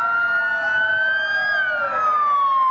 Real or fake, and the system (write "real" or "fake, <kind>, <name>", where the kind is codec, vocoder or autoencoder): real